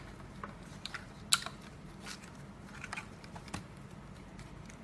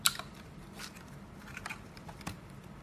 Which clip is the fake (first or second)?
second